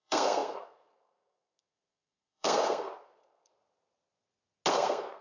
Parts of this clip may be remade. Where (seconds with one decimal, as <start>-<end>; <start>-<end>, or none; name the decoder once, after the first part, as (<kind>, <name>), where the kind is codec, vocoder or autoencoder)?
0.0-3.5 (codec, SNAC); 4.7-5.2